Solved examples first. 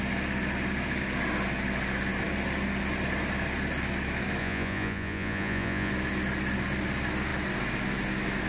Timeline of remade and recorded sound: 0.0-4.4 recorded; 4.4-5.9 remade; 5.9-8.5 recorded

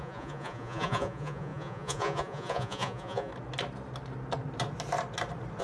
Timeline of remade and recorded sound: 0.0-3.3 remade; 3.3-5.6 recorded

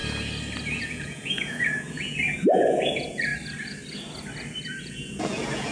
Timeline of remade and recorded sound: 0.0-0.8 recorded; 0.8-3.3 remade; 3.3-4.8 recorded; 4.8-5.7 remade

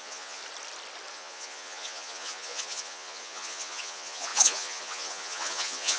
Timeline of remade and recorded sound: 0.0-0.4 remade; 0.4-1.1 recorded; 1.1-6.0 remade

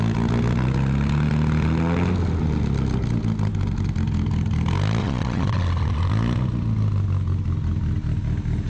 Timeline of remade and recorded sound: 0.0-5.0 recorded; 5.0-6.1 remade; 6.1-8.7 recorded

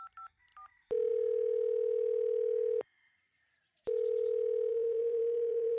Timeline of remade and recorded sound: 0.0-4.7 recorded; 4.7-5.8 remade

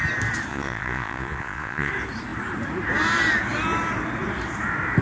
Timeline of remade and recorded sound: 0.0-0.5 recorded; 0.5-1.9 remade; 1.9-5.0 recorded